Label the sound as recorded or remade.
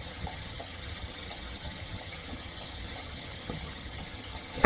remade